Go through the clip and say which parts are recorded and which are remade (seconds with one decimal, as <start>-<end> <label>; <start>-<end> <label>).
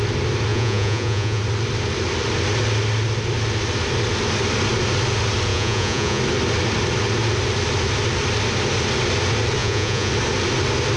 0.0-0.5 recorded; 0.5-1.4 remade; 1.4-5.5 recorded; 5.5-6.2 remade; 6.2-9.6 recorded; 9.6-10.1 remade; 10.1-11.0 recorded